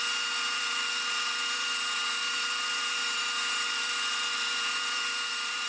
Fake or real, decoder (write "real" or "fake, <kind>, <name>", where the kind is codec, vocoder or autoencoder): fake, vocoder, BigVGAN v2